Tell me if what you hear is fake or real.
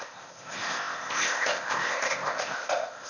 fake